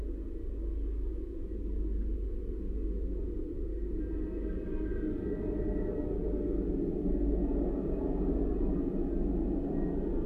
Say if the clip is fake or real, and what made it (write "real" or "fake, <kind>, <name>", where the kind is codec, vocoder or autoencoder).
real